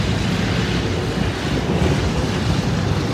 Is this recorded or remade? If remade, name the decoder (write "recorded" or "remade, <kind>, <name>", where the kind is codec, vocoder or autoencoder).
recorded